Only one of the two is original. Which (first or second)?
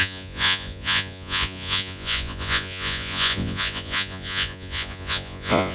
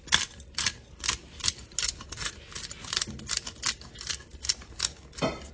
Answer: second